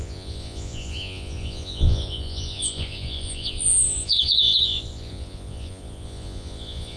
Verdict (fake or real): fake